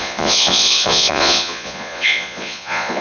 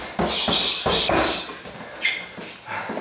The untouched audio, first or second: second